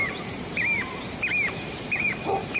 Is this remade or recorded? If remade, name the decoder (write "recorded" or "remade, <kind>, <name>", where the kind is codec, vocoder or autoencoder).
remade, vocoder, BigVGAN v2